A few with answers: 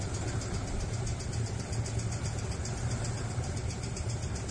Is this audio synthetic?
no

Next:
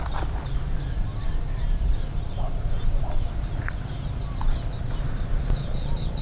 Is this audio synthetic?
no